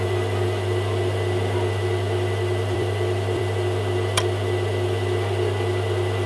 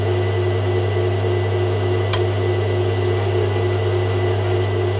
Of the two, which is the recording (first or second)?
second